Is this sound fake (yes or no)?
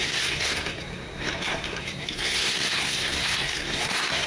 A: yes